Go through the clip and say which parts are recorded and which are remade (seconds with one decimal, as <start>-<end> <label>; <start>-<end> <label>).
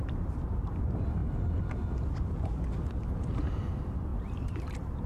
0.0-1.2 remade; 1.2-2.9 recorded; 2.9-5.1 remade